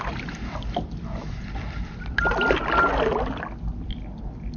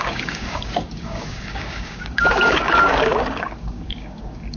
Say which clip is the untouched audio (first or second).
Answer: first